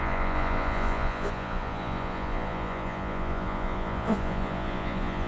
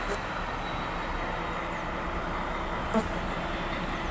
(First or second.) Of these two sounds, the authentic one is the second